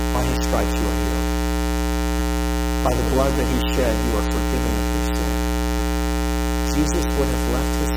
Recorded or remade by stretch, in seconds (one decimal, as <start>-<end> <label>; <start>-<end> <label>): 0.0-8.0 recorded